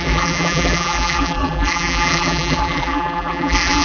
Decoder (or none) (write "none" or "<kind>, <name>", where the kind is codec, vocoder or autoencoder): vocoder, BigVGAN v2